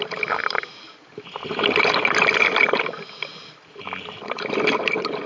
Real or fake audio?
real